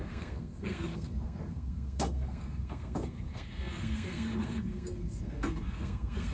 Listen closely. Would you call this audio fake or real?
fake